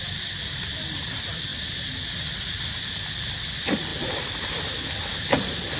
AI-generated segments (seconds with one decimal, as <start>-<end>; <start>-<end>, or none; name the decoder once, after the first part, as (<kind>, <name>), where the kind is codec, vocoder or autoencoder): 3.9-4.5 (vocoder, BigVGAN v2)